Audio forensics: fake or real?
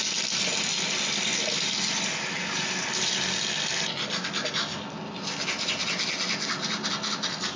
real